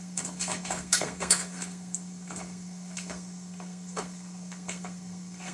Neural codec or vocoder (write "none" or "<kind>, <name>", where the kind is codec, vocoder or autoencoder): codec, SNAC